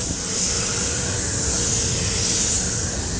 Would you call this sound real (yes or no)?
yes